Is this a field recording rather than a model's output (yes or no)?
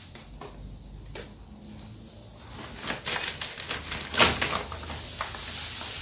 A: yes